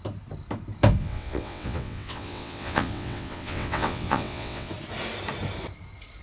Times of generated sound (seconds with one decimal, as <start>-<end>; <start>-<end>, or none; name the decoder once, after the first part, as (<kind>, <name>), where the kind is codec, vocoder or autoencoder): 1.0-4.7 (vocoder, WaveNeXt)